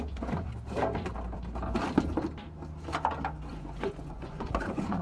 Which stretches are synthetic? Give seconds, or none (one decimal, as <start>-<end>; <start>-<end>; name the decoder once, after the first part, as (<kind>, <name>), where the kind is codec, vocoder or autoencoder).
0.0-0.5 (vocoder, Vocos); 3.5-5.0